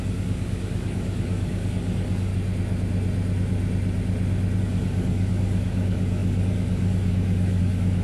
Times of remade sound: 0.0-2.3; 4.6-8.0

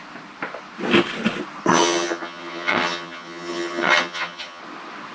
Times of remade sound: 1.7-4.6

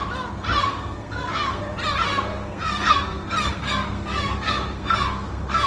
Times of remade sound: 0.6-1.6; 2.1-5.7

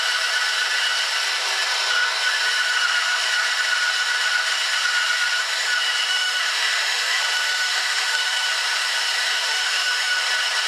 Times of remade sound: 6.1-8.5; 9.3-10.2

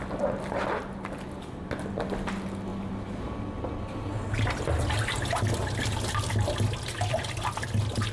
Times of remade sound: none

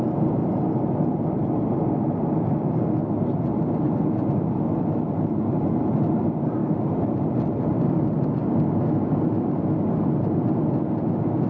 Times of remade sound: 0.4-1.5; 6.6-8.2

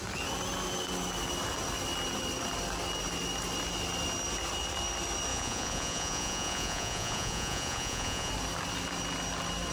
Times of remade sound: 5.3-8.3

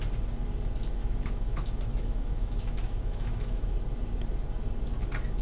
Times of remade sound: 1.0-3.7